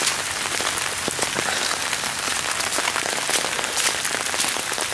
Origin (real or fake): real